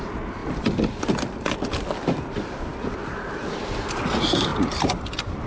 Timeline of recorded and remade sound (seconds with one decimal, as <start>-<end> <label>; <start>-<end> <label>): 0.0-4.5 recorded; 4.5-5.0 remade; 5.0-5.5 recorded